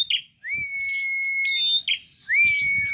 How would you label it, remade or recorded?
recorded